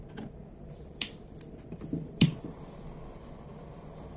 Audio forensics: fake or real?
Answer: fake